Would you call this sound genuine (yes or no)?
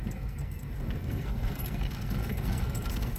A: no